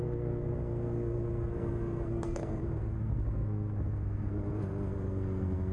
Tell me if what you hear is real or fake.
fake